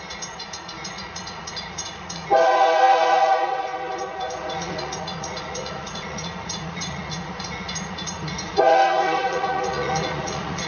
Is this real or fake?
fake